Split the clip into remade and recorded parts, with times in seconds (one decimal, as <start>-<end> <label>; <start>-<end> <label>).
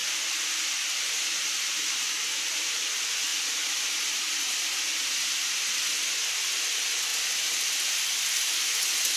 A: 0.0-9.2 recorded